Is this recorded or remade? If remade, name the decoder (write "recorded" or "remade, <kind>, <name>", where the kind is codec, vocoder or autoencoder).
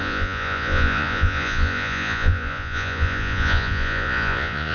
remade, vocoder, Vocos